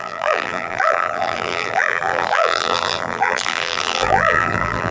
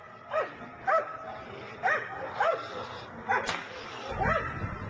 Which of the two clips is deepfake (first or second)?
first